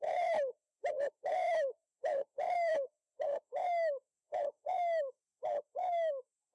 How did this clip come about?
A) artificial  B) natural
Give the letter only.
A